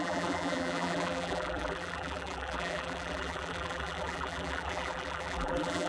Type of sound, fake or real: fake